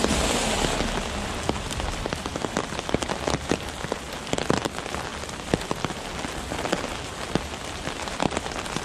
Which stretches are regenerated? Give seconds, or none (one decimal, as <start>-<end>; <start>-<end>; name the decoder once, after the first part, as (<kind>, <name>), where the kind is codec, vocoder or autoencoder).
5.1-6.1 (vocoder, BigVGAN v2)